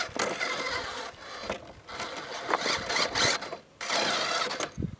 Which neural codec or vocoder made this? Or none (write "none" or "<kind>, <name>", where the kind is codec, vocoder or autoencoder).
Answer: none